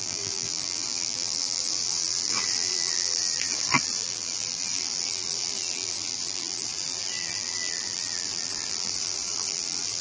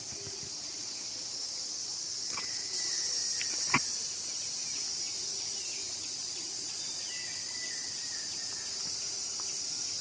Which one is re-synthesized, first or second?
first